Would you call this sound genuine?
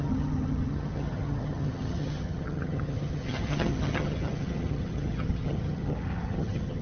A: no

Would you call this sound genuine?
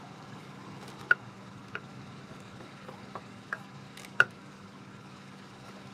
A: no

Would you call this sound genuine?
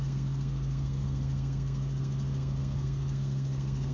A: no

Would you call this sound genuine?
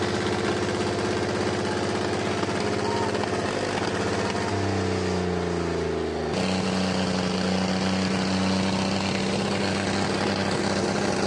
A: yes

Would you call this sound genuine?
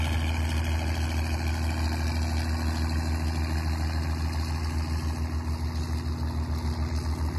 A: yes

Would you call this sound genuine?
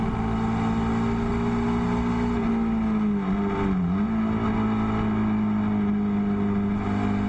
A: yes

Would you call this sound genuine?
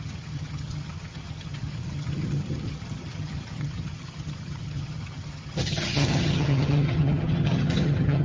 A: no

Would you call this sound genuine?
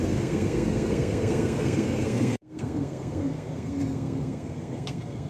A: no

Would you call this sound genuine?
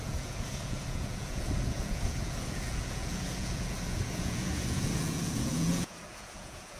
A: no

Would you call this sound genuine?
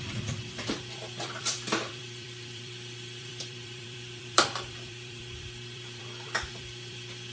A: no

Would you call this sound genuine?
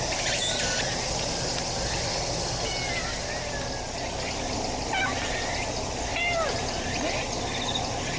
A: yes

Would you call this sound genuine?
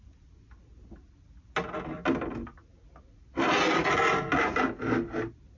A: yes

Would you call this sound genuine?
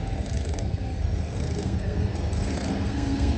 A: no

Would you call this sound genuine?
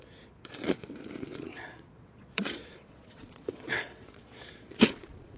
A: no